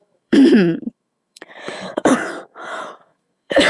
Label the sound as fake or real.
fake